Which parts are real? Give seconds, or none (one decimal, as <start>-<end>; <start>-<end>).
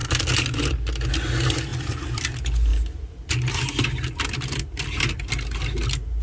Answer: 0.0-1.7; 2.2-2.7; 3.3-6.2